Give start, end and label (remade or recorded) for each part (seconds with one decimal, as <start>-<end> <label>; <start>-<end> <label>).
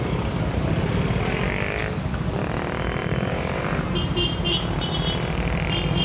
0.0-3.0 recorded; 3.0-3.9 remade; 3.9-6.0 recorded